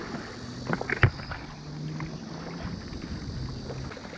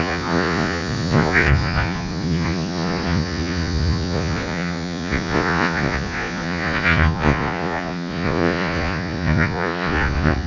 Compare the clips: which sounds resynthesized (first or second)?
second